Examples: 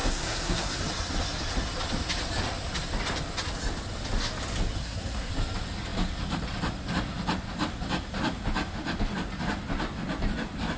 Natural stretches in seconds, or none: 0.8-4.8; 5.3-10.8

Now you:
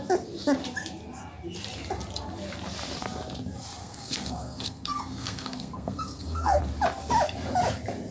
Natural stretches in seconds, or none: 0.0-3.8; 6.6-8.1

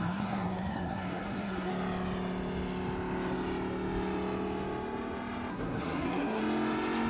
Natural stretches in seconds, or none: 1.7-5.5; 6.4-7.1

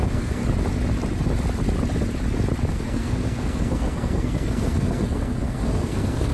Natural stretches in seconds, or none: 0.4-2.7

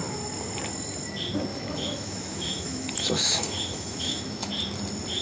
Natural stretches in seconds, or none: 0.0-1.5; 4.5-5.2

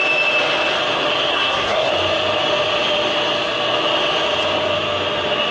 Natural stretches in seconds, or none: 0.0-1.3; 1.9-5.5

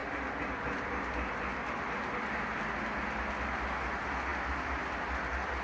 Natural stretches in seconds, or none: 0.0-5.6